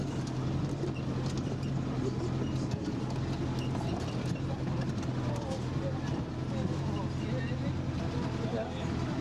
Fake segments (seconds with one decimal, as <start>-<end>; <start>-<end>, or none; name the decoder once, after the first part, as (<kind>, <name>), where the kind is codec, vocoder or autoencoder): none

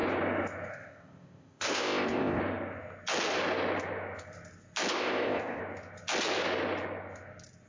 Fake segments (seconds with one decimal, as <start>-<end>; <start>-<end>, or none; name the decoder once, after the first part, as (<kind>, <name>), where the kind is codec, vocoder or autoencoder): 0.7-2.4 (codec, ZipCodec); 4.9-5.6